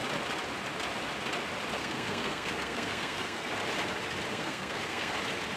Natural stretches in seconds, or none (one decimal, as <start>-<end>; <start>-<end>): 0.0-1.8; 3.5-4.3; 5.1-5.6